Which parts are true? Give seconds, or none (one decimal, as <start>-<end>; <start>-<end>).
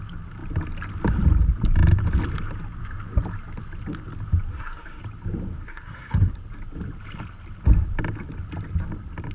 0.0-4.5; 5.0-5.6; 6.3-9.3